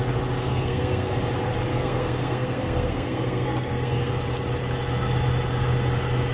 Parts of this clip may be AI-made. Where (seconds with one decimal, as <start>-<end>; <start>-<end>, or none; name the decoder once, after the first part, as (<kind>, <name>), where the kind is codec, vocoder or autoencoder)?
0.5-1.1 (codec, SNAC); 1.7-4.1